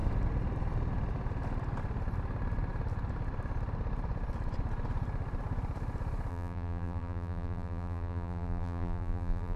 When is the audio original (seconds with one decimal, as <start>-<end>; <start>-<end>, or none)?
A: 0.0-6.3